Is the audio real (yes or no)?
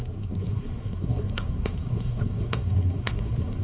no